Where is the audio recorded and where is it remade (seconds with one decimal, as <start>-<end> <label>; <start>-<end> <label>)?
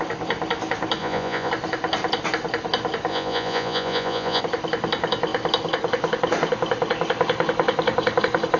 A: 0.0-1.0 recorded; 1.0-1.5 remade; 1.5-3.1 recorded; 3.1-4.4 remade; 4.4-8.6 recorded